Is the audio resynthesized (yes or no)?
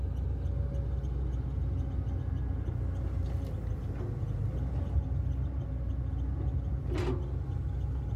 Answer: no